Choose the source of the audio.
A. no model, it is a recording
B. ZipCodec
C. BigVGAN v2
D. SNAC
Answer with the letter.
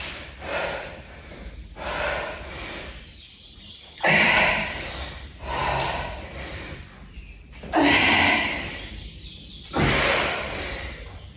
C